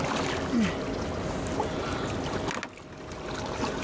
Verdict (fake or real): real